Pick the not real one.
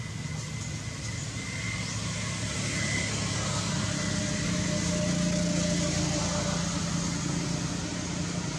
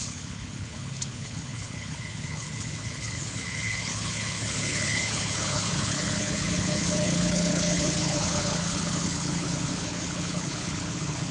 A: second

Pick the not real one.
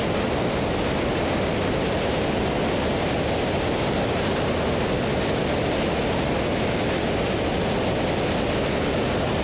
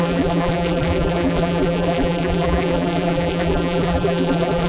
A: second